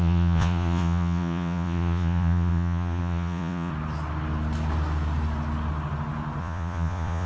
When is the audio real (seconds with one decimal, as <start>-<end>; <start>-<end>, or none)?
3.7-6.4